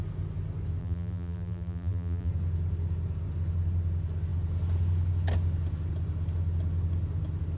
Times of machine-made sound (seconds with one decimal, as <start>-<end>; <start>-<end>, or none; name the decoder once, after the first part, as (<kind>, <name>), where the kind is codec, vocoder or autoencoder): 0.8-2.3 (vocoder, BigVGAN v2)